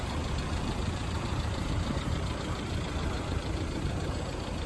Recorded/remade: remade